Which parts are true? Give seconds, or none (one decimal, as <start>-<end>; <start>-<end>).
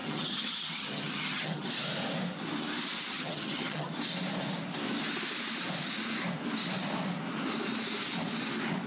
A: 1.7-3.1; 3.9-8.9